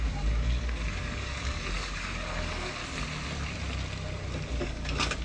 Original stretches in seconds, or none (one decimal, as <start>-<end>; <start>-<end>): 2.8-4.6